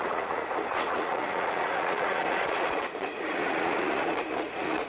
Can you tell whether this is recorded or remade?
remade